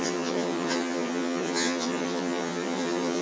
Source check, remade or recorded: remade